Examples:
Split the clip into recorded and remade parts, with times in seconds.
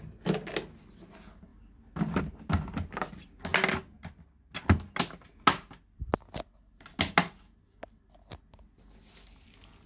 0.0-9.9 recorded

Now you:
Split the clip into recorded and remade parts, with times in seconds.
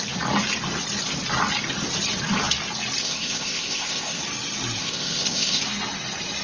0.0-3.0 recorded; 3.0-4.2 remade; 4.2-4.8 recorded; 4.8-5.6 remade; 5.6-6.4 recorded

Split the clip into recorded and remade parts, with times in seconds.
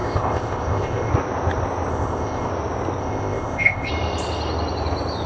0.0-1.1 remade; 1.1-1.9 recorded; 1.9-2.5 remade; 2.5-3.0 recorded; 3.0-3.9 remade; 3.9-5.3 recorded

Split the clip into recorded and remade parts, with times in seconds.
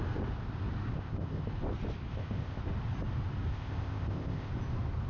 0.0-0.9 recorded; 0.9-1.5 remade; 1.5-2.1 recorded; 2.1-2.6 remade; 2.6-3.5 recorded; 3.5-4.5 remade; 4.5-5.1 recorded